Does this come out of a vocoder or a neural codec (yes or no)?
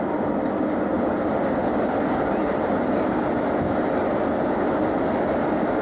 no